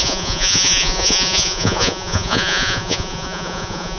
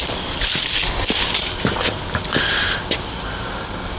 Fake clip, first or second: first